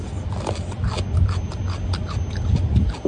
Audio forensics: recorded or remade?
recorded